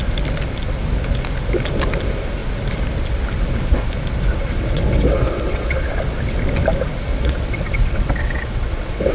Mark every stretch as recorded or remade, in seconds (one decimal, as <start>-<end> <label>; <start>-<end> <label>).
0.0-4.3 recorded; 4.3-5.9 remade; 5.9-7.1 recorded; 7.1-9.1 remade